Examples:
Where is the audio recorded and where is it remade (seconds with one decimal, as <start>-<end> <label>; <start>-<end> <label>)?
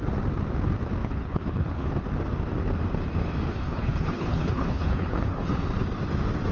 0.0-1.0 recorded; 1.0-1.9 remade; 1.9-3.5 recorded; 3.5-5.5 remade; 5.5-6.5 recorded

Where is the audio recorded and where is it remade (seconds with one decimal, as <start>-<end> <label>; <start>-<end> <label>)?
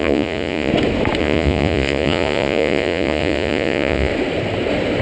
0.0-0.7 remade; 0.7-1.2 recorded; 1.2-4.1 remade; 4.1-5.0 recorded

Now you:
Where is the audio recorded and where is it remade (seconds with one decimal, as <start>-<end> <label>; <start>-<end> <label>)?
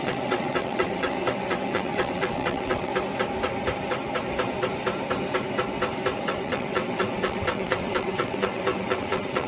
0.0-2.9 remade; 2.9-6.2 recorded; 6.2-9.5 remade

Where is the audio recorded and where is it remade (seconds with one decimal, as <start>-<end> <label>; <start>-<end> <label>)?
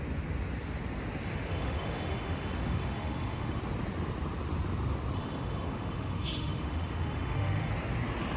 0.0-1.5 recorded; 1.5-3.6 remade; 3.6-5.2 recorded; 5.2-7.7 remade; 7.7-8.4 recorded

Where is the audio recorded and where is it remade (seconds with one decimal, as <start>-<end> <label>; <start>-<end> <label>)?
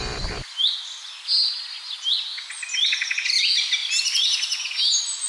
0.0-5.3 recorded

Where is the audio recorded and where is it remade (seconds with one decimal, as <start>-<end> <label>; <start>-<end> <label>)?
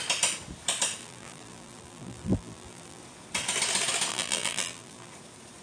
0.0-1.0 recorded; 1.0-3.0 remade; 3.0-4.1 recorded; 4.1-5.1 remade; 5.1-5.6 recorded